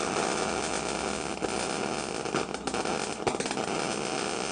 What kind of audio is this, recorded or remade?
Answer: recorded